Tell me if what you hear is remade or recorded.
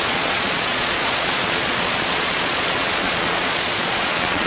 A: remade